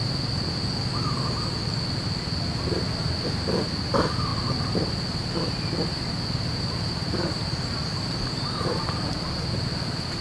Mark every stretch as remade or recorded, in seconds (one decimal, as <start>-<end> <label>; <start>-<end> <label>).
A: 0.0-10.2 recorded